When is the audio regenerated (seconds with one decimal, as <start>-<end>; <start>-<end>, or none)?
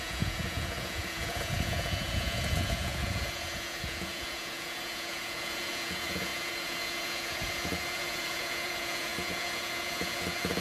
0.0-10.6